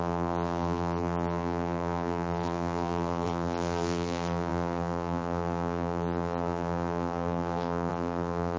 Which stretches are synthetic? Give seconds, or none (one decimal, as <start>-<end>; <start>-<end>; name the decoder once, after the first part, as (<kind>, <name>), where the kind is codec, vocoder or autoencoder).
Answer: 0.0-8.6 (vocoder, BigVGAN v2)